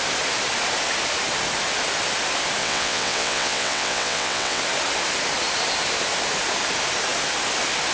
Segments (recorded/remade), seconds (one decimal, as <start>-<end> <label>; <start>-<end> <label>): 0.0-2.6 recorded; 2.6-4.6 remade; 4.6-7.9 recorded